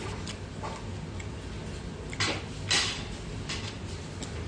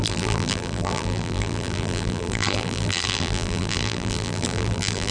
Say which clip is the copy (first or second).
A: second